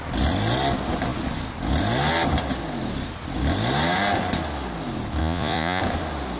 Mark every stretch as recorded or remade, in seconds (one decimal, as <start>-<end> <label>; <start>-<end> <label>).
0.0-5.2 recorded; 5.2-5.8 remade; 5.8-6.4 recorded